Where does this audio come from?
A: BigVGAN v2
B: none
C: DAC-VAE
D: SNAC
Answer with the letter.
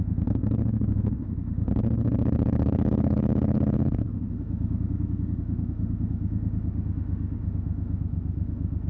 C